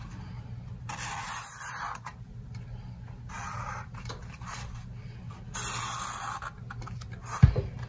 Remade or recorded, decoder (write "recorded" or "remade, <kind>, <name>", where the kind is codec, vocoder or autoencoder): recorded